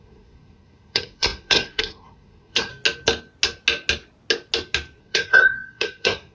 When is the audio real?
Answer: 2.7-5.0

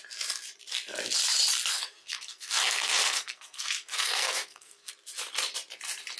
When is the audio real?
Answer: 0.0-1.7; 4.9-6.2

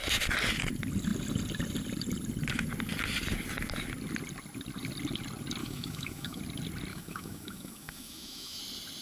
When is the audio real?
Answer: 0.0-5.6; 6.4-6.9; 8.6-9.0

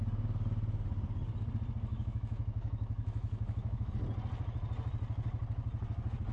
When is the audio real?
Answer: 0.0-1.9; 3.9-6.3

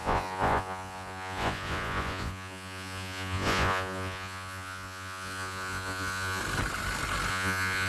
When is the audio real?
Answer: 6.4-7.3

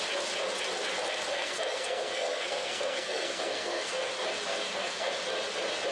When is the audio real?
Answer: 0.0-1.3; 4.1-4.5; 5.1-5.9

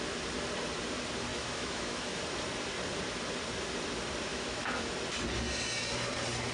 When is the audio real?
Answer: 0.0-1.3; 2.2-4.3; 4.9-6.5

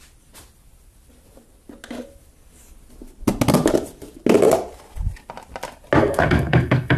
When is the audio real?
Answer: 0.0-6.0